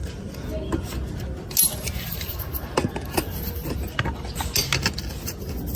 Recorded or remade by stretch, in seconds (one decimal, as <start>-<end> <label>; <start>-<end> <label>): 0.0-5.8 recorded